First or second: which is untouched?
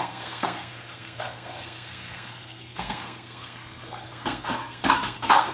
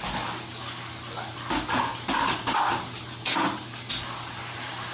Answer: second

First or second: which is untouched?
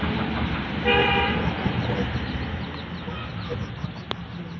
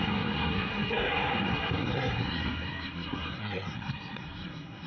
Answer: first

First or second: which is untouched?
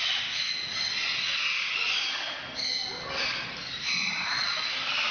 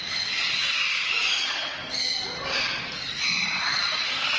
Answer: first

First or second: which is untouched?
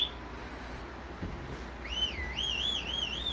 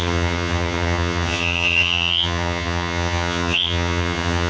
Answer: first